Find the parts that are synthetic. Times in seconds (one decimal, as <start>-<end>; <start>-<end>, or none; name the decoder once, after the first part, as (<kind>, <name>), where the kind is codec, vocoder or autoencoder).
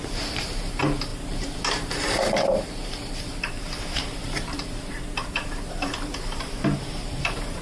0.0-7.6 (vocoder, BigVGAN v2)